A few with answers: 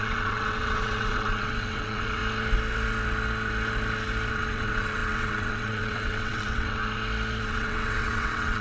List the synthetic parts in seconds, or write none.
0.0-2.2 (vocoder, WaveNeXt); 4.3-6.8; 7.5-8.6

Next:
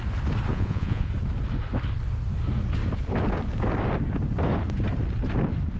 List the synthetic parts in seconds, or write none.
0.5-1.1 (vocoder, Vocos)

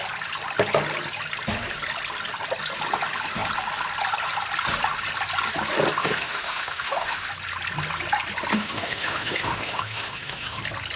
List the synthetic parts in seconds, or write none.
6.0-7.3 (autoencoder, DAC-VAE); 8.5-10.6

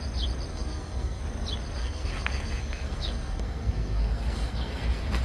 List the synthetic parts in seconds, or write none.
0.5-1.2 (codec, SNAC); 1.8-5.2

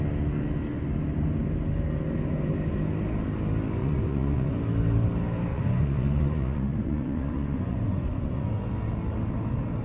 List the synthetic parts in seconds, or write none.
3.8-4.5 (vocoder, Vocos); 5.5-8.6